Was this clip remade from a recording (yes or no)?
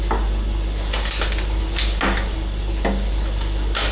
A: no